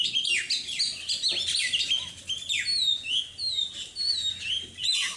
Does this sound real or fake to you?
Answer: real